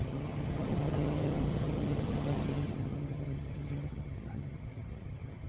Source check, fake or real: fake